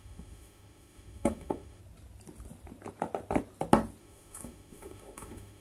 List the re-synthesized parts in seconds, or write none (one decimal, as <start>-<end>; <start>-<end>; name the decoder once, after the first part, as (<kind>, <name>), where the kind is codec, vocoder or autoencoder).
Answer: 0.0-1.8 (autoencoder, DAC-VAE); 4.0-5.6